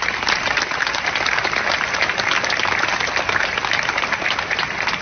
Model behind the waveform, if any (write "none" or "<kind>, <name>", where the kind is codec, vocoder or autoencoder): none